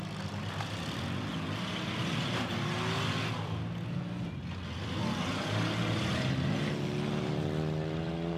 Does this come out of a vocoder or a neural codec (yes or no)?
no